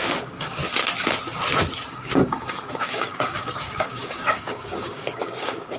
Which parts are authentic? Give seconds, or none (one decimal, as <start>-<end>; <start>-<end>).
0.6-1.9